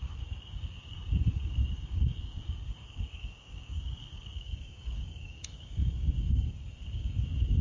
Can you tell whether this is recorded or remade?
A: remade